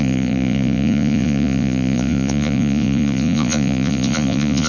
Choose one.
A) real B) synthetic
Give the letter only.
B